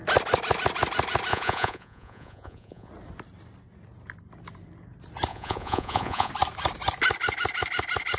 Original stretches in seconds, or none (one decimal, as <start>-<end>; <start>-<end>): 0.0-1.3; 2.9-5.3; 6.3-8.2